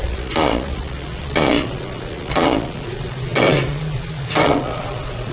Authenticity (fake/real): fake